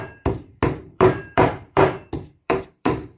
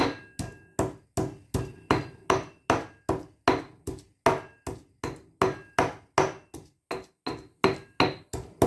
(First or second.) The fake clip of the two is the first